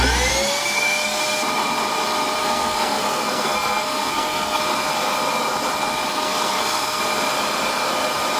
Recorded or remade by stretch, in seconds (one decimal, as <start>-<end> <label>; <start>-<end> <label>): 0.0-0.6 recorded; 0.6-1.2 remade; 1.2-2.4 recorded; 2.4-4.6 remade; 4.6-6.1 recorded; 6.1-7.0 remade; 7.0-8.4 recorded